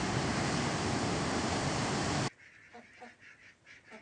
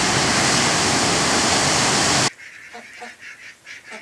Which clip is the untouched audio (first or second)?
second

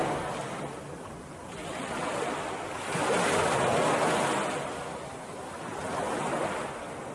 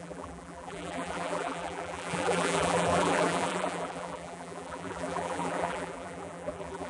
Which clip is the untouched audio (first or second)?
first